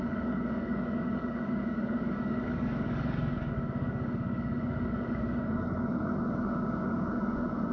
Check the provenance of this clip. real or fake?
fake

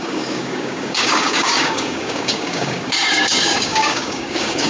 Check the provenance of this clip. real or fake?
fake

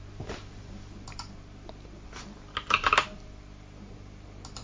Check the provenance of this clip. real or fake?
real